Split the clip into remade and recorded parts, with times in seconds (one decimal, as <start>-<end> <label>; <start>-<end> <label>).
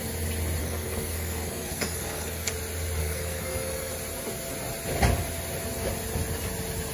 0.0-0.6 recorded; 0.6-2.5 remade; 2.5-3.0 recorded; 3.0-3.9 remade; 3.9-6.9 recorded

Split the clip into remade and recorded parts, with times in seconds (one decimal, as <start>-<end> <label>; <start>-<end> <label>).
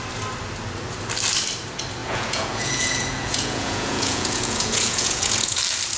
0.0-2.0 recorded; 2.0-5.6 remade; 5.6-6.0 recorded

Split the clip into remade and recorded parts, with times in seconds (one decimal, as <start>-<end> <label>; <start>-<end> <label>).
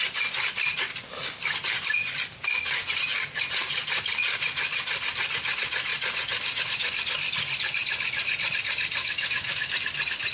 0.0-9.0 recorded; 9.0-9.7 remade; 9.7-10.3 recorded